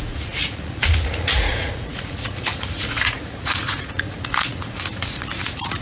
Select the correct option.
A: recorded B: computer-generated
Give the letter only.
B